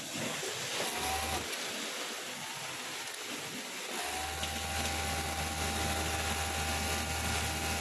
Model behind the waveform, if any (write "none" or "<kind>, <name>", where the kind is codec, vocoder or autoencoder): none